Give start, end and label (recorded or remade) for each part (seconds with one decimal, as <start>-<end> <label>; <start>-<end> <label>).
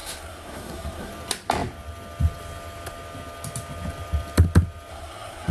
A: 0.0-1.1 remade; 1.1-4.9 recorded; 4.9-5.5 remade